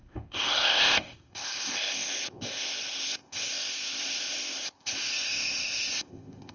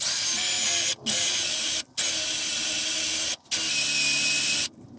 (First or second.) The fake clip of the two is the first